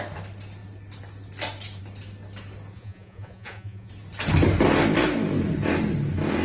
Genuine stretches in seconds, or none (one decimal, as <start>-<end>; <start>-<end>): 0.0-2.7; 3.9-6.4